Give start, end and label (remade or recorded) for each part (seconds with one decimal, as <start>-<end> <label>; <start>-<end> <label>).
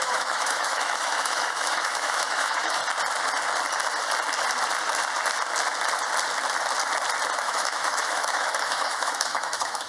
0.0-2.8 remade; 2.8-7.4 recorded; 7.4-9.9 remade